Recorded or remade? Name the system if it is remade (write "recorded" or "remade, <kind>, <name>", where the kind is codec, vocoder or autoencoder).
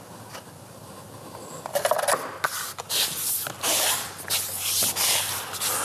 recorded